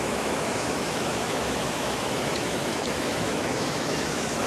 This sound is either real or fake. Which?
fake